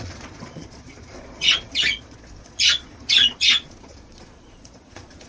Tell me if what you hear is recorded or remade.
remade